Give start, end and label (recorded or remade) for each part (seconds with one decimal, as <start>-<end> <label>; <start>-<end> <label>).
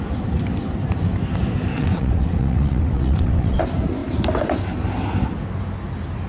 0.0-1.7 recorded; 1.7-3.6 remade; 3.6-6.3 recorded